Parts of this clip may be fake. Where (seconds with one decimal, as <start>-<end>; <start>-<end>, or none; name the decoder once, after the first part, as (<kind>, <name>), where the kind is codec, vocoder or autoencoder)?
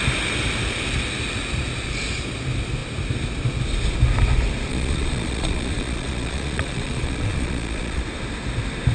4.7-8.0 (vocoder, Vocos)